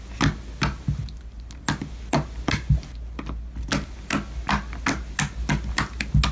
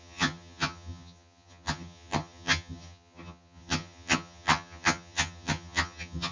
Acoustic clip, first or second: first